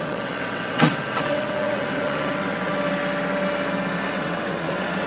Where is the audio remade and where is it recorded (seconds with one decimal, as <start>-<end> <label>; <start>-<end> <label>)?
0.0-2.7 remade; 2.7-4.1 recorded; 4.1-5.1 remade

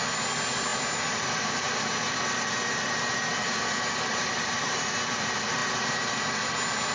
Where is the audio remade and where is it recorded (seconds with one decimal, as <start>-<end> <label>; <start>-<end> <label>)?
0.0-6.9 recorded

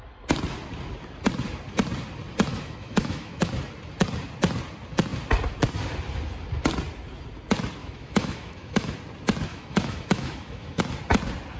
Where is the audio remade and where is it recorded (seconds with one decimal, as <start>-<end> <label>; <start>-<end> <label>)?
0.0-2.5 recorded; 2.5-3.5 remade; 3.5-7.8 recorded; 7.8-8.9 remade; 8.9-9.5 recorded; 9.5-10.8 remade; 10.8-11.6 recorded

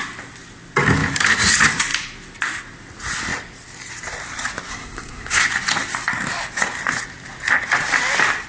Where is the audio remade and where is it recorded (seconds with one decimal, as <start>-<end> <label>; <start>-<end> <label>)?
0.0-4.7 recorded; 4.7-5.4 remade; 5.4-8.5 recorded

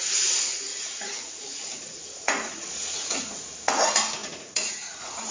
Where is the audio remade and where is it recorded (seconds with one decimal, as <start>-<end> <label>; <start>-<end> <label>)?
0.0-0.7 recorded; 0.7-3.8 remade; 3.8-4.2 recorded; 4.2-5.3 remade

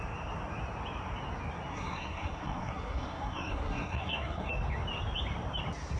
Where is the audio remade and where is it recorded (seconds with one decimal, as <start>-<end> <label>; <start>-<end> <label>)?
0.0-1.7 recorded; 1.7-4.5 remade; 4.5-6.0 recorded

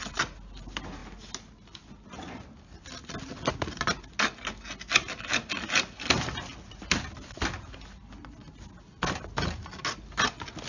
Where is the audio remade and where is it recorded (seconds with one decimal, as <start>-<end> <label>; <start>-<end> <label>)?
0.0-10.7 recorded